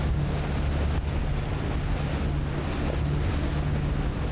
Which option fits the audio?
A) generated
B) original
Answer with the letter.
B